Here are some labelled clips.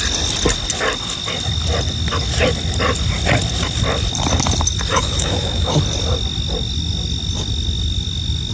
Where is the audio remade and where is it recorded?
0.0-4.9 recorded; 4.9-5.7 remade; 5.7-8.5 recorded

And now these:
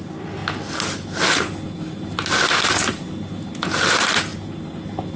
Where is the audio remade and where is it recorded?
0.0-5.2 recorded

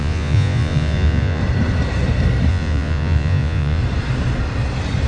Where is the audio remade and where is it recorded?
0.0-1.4 remade; 1.4-2.5 recorded; 2.5-3.8 remade; 3.8-5.1 recorded

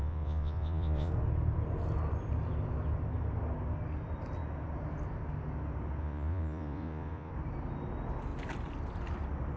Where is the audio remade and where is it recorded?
0.0-1.1 remade; 1.1-6.0 recorded; 6.0-7.3 remade; 7.3-9.6 recorded

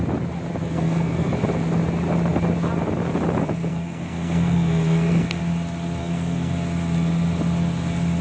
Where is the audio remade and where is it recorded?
0.0-0.6 recorded; 0.6-1.3 remade; 1.3-3.7 recorded; 3.7-5.4 remade; 5.4-6.0 recorded; 6.0-6.5 remade; 6.5-8.2 recorded

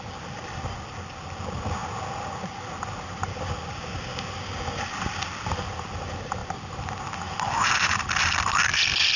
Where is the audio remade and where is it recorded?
0.0-9.2 recorded

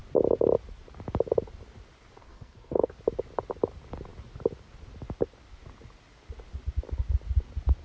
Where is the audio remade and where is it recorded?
0.0-2.2 recorded; 2.2-2.9 remade; 2.9-7.8 recorded

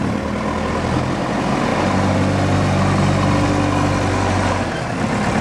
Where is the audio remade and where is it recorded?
0.0-5.4 recorded